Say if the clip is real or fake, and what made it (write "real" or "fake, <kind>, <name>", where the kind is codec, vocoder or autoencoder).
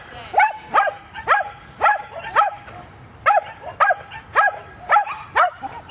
real